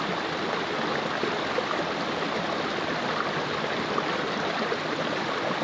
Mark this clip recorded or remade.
recorded